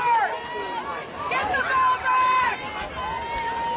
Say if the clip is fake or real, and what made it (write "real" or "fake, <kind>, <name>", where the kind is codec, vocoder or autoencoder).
real